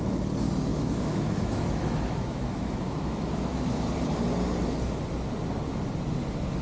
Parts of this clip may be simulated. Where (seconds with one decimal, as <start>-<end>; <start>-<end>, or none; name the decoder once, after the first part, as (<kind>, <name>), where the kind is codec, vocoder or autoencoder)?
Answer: 0.7-3.9 (autoencoder, DAC-VAE)